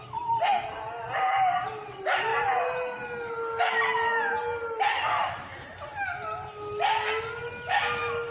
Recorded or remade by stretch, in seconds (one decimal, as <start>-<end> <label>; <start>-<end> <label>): 0.0-8.3 recorded